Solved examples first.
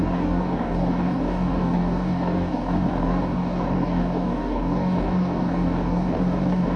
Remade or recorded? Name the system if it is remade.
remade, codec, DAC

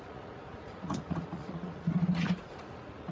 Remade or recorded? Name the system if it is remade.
remade, vocoder, Vocos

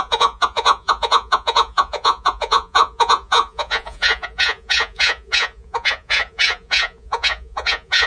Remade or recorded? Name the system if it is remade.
remade, vocoder, Vocos